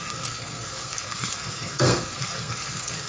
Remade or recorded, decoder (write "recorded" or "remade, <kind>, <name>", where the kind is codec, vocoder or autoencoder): remade, codec, SNAC